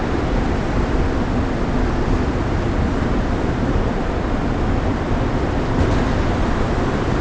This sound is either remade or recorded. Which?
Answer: recorded